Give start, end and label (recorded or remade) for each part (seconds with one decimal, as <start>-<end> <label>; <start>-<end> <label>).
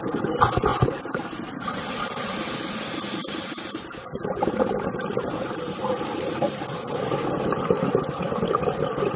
0.0-0.7 recorded; 0.7-1.9 remade; 1.9-3.2 recorded; 3.2-4.1 remade; 4.1-9.2 recorded